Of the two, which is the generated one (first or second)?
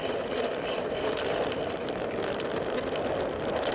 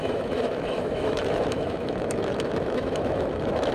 second